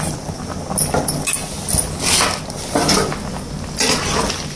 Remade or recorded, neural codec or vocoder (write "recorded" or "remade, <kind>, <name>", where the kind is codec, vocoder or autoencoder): recorded